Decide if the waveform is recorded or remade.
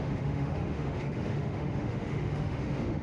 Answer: remade